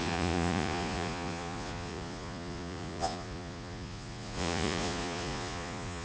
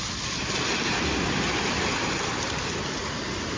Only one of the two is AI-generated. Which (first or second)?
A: first